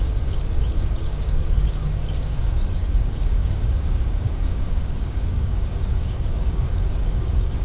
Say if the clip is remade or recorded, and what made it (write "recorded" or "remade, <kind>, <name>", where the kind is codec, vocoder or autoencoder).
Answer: remade, codec, DAC